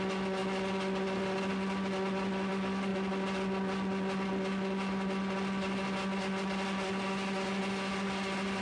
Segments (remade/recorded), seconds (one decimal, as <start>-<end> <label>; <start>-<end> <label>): 0.0-8.6 recorded